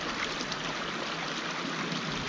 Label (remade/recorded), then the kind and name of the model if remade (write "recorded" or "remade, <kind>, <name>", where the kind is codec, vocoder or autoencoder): recorded